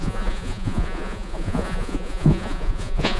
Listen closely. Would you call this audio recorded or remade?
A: remade